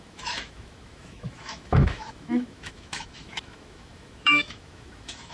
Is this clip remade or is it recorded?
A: remade